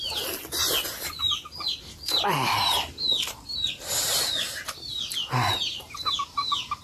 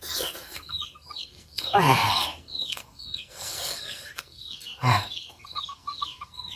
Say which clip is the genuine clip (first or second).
first